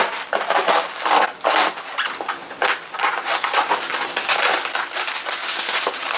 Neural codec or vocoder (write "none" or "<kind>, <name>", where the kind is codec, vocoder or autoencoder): none